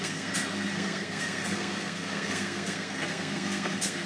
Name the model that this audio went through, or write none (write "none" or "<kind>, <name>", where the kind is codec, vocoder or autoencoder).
codec, SNAC